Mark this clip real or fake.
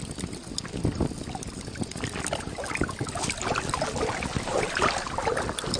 real